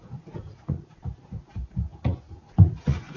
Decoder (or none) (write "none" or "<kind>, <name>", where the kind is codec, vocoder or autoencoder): vocoder, Vocos